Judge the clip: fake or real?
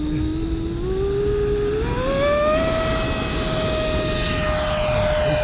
real